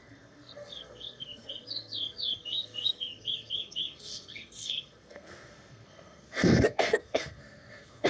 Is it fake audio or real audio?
fake